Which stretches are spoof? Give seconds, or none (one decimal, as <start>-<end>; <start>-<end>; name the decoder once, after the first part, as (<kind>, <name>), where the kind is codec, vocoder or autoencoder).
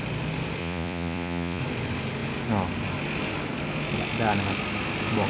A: 0.6-1.6 (vocoder, Vocos)